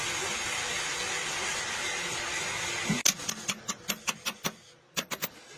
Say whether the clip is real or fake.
real